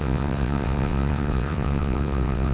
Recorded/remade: remade